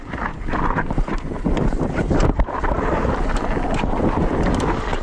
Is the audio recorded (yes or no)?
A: yes